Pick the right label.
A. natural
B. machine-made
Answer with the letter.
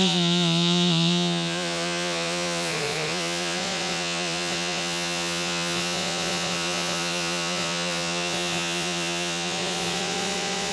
B